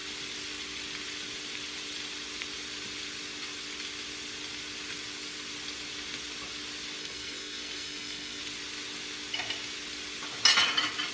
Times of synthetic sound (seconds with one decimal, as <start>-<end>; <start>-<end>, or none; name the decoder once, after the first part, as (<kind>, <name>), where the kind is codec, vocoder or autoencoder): 7.0-8.4 (codec, SNAC)